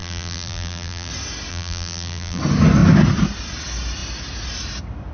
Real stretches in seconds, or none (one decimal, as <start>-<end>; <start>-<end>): 1.1-1.5; 2.4-5.1